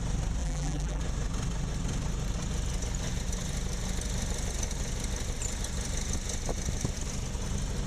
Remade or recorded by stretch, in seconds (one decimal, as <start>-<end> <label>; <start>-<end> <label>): 0.0-0.4 recorded; 0.4-1.0 remade; 1.0-7.9 recorded